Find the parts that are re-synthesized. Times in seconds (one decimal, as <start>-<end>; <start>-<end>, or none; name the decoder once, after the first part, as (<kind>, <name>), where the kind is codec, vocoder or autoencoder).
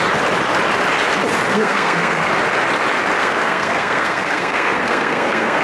1.5-2.3 (codec, SNAC); 3.2-5.6